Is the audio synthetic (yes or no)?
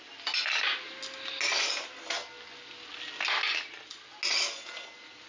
no